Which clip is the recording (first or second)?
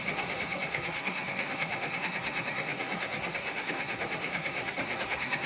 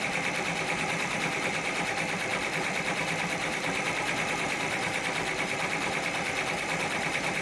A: second